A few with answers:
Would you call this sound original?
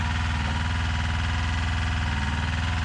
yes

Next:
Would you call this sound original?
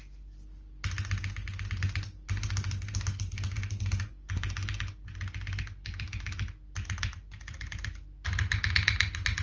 yes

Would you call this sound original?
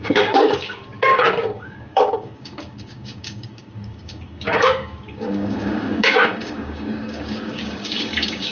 no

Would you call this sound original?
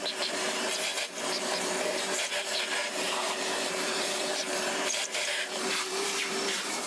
no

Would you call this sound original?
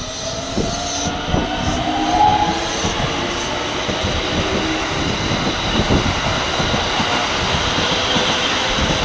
yes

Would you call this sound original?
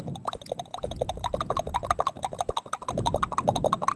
yes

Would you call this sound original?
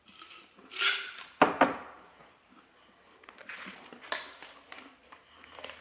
no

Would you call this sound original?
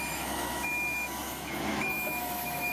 no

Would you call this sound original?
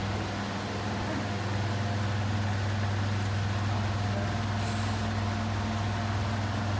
yes